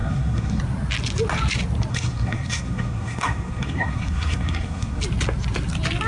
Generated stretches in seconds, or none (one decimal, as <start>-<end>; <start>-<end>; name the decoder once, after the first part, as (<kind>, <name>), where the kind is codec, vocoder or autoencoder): 0.0-0.6 (codec, SNAC); 1.9-5.0